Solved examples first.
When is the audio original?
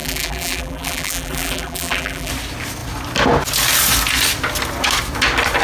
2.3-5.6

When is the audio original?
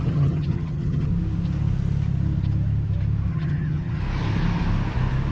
1.1-3.3; 4.0-5.3